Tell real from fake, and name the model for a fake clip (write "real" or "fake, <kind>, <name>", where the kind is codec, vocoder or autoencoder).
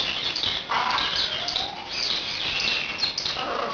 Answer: real